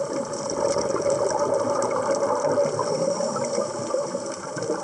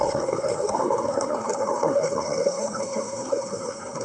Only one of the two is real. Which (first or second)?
first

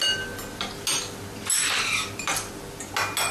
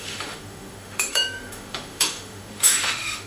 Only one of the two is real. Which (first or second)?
first